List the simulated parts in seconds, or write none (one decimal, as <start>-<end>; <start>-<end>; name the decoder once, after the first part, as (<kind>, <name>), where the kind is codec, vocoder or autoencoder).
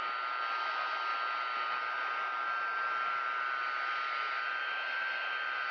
none